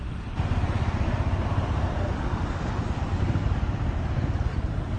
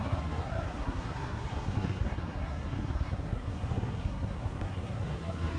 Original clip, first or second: first